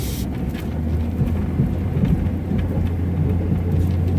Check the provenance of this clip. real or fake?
real